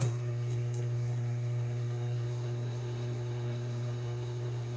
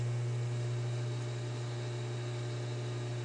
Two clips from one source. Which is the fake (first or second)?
first